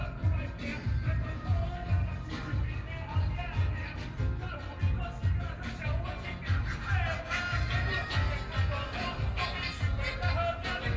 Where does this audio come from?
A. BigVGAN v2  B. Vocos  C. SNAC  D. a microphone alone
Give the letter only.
D